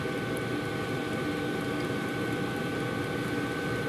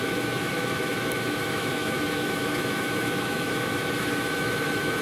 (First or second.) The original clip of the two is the first